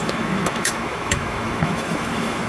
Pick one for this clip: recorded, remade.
remade